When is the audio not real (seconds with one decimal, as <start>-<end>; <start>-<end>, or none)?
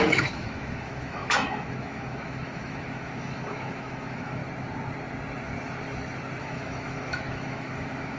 0.0-4.4; 6.4-8.2